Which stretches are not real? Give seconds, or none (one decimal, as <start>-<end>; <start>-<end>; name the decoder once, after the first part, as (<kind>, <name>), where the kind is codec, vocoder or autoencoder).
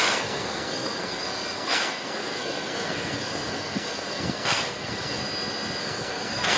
0.0-5.2 (codec, SNAC); 5.8-6.6